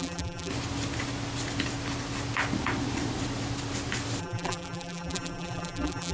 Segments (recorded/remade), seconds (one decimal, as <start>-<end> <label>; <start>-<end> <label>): 0.0-0.5 remade; 0.5-4.2 recorded; 4.2-6.1 remade